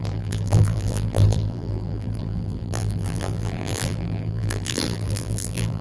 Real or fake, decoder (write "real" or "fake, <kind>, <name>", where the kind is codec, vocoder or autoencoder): fake, vocoder, BigVGAN v2